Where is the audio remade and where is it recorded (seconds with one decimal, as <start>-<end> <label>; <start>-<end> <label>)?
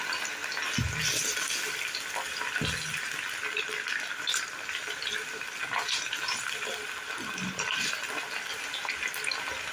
0.0-9.7 recorded